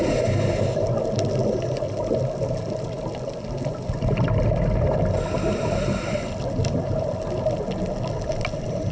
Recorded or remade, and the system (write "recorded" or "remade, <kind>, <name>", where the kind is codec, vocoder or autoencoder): recorded